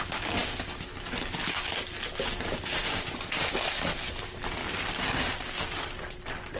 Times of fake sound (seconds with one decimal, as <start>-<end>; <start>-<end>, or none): 4.6-5.7